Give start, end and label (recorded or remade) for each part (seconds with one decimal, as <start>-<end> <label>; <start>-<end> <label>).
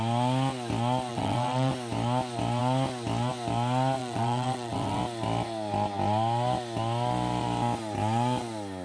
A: 0.0-1.1 recorded; 1.1-1.7 remade; 1.7-4.0 recorded; 4.0-5.0 remade; 5.0-8.8 recorded